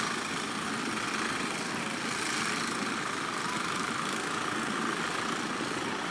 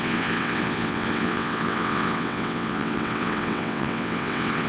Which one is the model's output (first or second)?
second